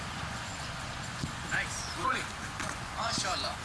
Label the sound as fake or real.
fake